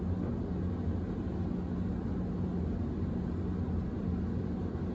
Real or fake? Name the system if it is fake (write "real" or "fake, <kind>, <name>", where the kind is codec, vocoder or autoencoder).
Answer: real